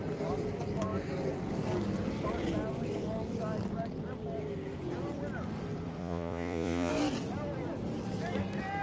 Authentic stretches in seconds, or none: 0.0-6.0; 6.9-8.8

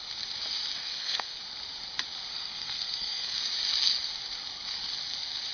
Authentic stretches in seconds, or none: 0.0-0.8; 1.4-2.3; 3.5-5.5

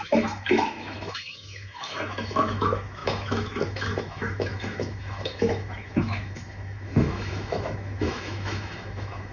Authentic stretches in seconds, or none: none